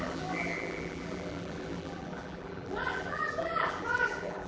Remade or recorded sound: remade